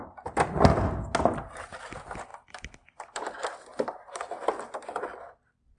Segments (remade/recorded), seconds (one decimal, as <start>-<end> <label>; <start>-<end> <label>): 0.0-2.3 recorded; 2.3-5.8 remade